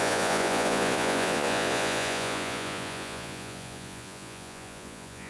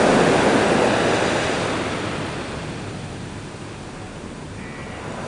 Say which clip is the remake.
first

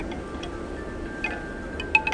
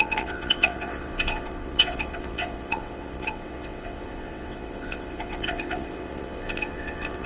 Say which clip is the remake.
second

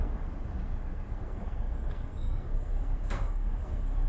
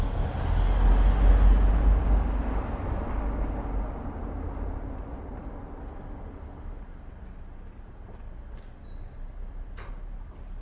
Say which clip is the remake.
first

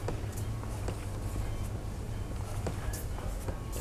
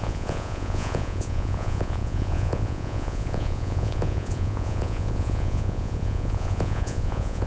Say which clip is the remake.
second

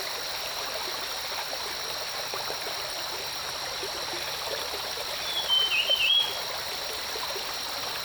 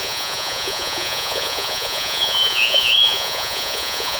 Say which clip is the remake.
second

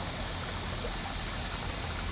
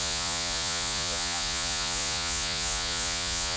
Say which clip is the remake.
second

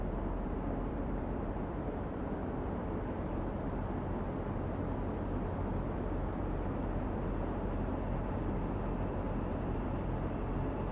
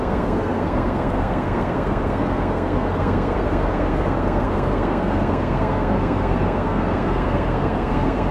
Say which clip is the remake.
second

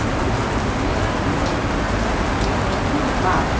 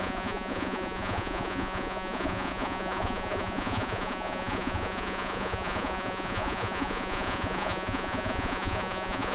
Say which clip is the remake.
second